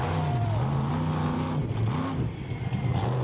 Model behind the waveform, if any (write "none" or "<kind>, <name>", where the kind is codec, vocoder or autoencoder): none